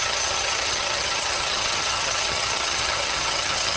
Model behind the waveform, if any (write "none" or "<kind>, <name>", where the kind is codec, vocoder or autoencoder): vocoder, HiFi-GAN